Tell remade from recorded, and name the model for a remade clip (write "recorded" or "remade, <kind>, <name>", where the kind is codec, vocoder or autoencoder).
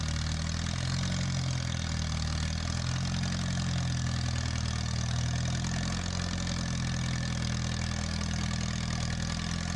recorded